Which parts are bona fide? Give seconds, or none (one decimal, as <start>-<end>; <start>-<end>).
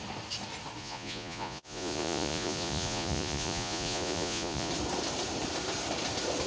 0.0-0.8; 4.7-6.5